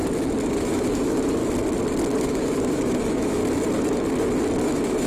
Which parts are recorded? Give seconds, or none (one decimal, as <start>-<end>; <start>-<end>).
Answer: 0.0-0.6; 1.4-2.2; 3.4-4.6